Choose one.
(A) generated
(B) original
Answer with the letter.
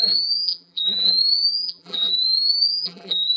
A